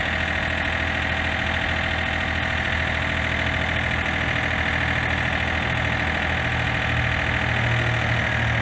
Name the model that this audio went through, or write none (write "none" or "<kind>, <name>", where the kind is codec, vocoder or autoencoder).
none